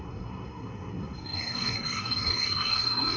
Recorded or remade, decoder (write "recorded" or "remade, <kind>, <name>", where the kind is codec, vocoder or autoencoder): remade, codec, SNAC